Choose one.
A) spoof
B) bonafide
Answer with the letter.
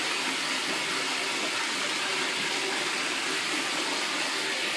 B